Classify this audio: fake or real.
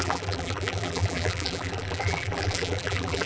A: fake